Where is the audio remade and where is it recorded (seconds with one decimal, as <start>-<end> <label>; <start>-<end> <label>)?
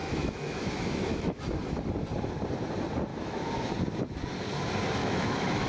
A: 0.0-1.4 remade; 1.4-3.1 recorded; 3.1-3.7 remade; 3.7-5.0 recorded; 5.0-5.7 remade